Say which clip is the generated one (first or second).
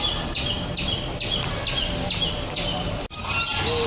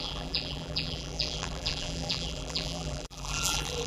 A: second